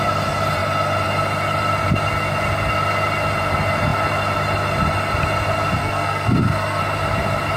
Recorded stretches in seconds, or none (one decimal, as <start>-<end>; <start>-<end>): 0.0-5.8; 6.8-7.6

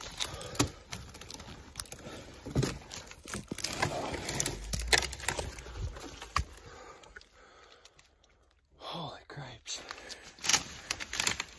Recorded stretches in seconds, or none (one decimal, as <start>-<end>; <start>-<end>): 0.0-11.6